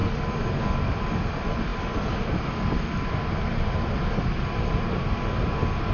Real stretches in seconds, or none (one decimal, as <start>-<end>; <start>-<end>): 0.0-5.9